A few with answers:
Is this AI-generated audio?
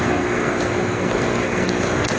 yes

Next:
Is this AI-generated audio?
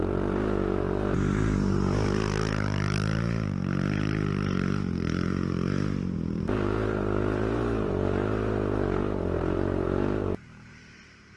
yes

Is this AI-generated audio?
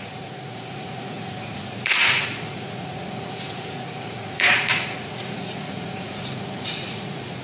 yes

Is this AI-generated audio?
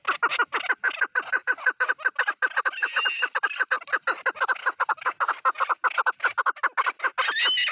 no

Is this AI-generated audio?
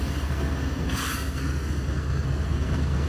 yes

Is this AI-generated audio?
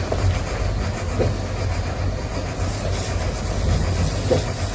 no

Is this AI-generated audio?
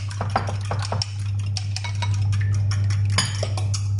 no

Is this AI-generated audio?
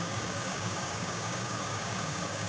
yes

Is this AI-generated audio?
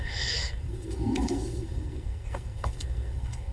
yes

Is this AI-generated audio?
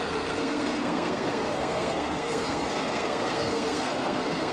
yes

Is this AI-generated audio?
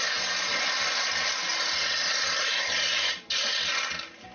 no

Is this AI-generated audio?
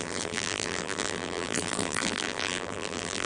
yes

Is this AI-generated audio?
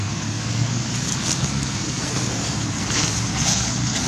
yes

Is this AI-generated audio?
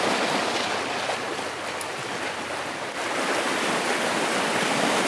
no